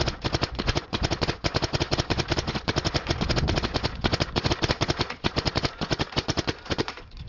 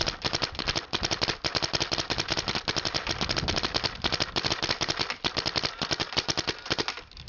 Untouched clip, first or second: second